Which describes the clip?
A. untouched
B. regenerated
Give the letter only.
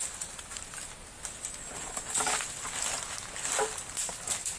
A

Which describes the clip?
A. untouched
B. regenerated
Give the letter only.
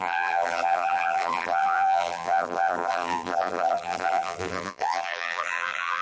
B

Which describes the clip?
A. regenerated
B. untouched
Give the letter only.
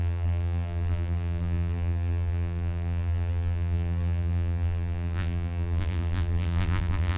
A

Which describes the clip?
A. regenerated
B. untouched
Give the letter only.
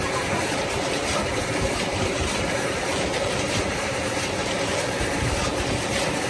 A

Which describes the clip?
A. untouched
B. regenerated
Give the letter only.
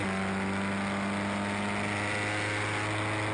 A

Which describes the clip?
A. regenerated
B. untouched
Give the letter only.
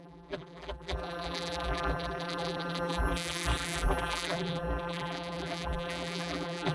A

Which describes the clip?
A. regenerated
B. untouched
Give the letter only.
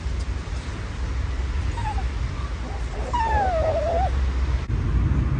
B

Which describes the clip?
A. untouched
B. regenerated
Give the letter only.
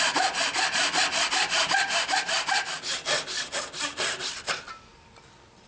A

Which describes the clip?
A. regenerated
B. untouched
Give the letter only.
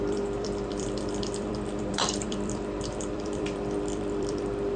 A